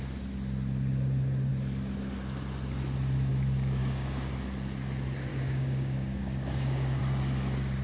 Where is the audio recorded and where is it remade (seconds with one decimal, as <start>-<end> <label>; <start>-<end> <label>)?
0.0-3.8 recorded; 3.8-4.3 remade; 4.3-5.3 recorded; 5.3-7.0 remade; 7.0-7.8 recorded